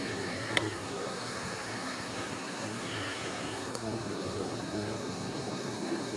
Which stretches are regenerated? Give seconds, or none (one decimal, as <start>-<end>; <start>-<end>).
0.0-6.2